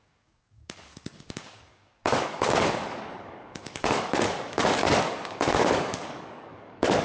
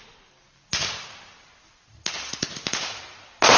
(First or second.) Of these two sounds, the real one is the second